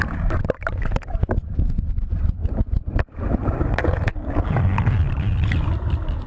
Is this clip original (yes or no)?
yes